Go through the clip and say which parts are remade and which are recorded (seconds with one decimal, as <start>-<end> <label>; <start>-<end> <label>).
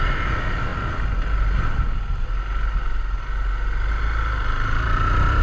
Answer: 0.0-5.4 recorded